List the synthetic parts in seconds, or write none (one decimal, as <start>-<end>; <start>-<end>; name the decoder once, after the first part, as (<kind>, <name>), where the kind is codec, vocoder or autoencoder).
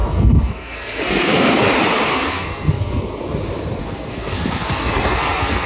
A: 0.0-1.7 (codec, SNAC); 2.1-3.0; 3.8-5.7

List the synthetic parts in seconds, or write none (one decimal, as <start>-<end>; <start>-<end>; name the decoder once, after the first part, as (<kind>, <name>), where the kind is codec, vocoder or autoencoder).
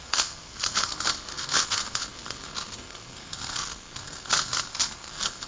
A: 0.0-5.5 (codec, SNAC)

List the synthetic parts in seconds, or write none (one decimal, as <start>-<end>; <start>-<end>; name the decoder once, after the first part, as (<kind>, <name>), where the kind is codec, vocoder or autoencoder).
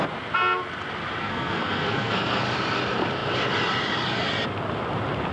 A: 1.2-2.4 (codec, SNAC)